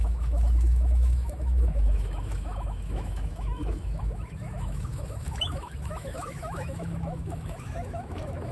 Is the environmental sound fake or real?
fake